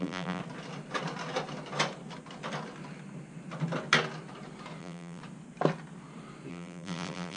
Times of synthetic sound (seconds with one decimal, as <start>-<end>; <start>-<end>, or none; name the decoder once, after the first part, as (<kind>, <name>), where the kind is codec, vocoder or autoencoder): 0.0-0.4 (vocoder, BigVGAN v2); 4.8-5.2; 6.5-7.4